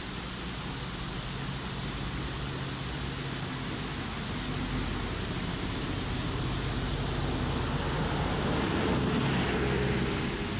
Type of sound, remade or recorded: recorded